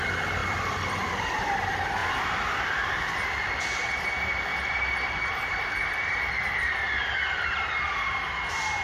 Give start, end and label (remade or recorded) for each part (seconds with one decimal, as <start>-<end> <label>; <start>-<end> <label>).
0.0-0.4 recorded; 0.4-1.2 remade; 1.2-4.5 recorded; 4.5-7.0 remade; 7.0-8.8 recorded